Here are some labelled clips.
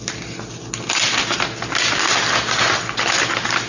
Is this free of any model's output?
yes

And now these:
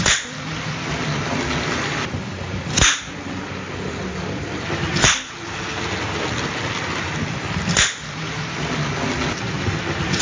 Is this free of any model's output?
yes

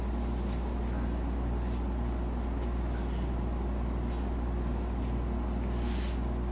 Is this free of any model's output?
yes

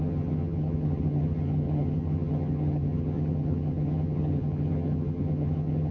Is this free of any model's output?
no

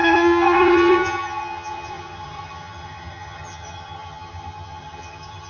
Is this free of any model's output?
no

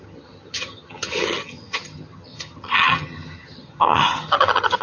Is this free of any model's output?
no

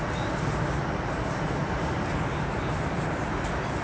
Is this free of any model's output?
yes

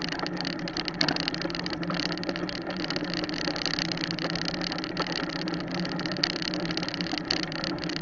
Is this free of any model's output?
yes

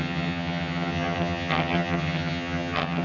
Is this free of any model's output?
no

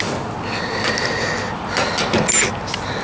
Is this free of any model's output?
yes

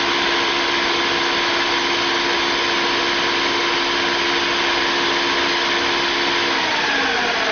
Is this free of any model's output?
yes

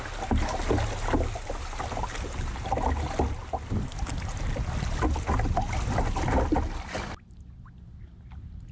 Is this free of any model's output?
yes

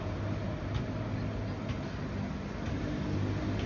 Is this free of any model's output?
yes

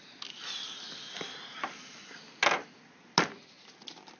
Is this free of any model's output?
yes